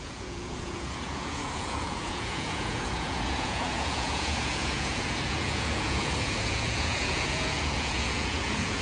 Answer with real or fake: fake